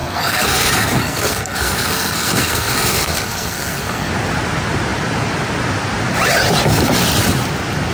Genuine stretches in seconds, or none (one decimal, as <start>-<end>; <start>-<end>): 4.1-7.9